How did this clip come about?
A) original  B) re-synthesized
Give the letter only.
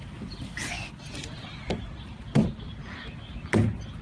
A